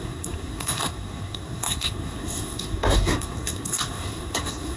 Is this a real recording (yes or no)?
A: no